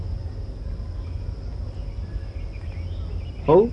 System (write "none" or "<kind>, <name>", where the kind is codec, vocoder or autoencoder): none